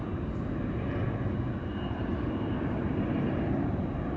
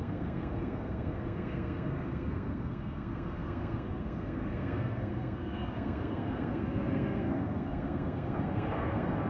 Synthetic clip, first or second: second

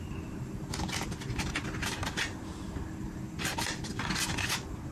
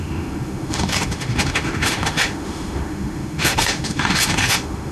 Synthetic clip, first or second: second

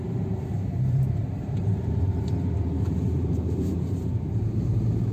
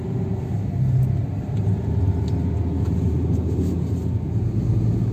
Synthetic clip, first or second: first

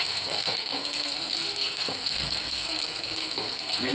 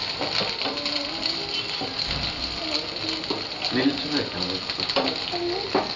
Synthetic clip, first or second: first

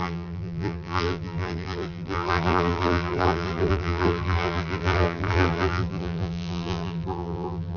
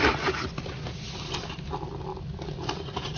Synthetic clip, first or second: first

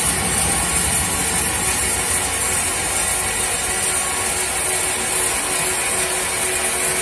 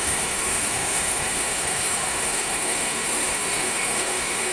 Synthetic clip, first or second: second